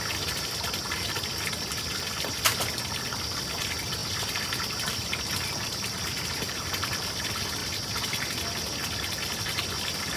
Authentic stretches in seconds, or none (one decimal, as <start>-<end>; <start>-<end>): 0.0-6.1; 6.7-10.2